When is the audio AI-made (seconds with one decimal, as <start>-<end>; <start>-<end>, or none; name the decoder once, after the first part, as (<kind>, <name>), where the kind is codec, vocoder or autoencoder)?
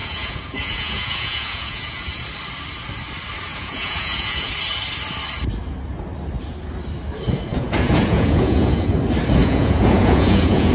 0.0-2.2 (vocoder, Vocos); 3.5-4.5; 7.5-8.9; 9.4-10.7